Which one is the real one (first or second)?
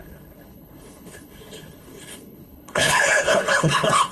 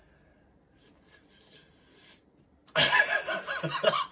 second